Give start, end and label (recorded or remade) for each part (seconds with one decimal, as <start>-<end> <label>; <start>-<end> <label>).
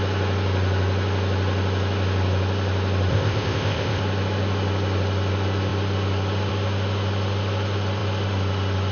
0.0-3.1 recorded; 3.1-4.0 remade; 4.0-8.9 recorded